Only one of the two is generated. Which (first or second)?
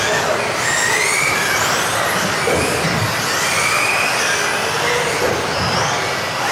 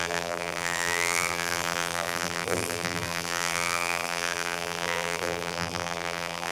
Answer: second